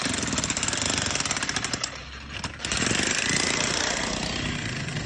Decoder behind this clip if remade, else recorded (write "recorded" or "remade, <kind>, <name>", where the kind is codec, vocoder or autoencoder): recorded